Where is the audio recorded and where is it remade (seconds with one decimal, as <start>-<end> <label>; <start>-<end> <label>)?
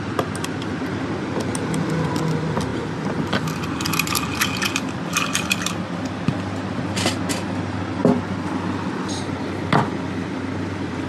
0.0-11.1 recorded